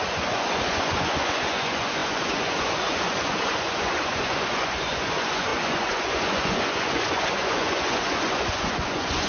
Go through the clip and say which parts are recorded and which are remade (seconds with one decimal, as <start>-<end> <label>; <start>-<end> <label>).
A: 0.0-9.3 remade